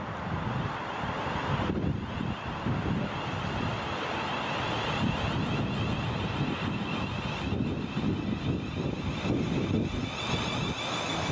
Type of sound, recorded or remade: recorded